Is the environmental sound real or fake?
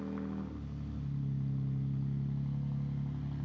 real